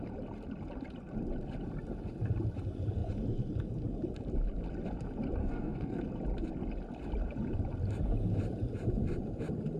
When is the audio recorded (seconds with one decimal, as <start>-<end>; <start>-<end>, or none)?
0.0-5.4; 6.0-9.8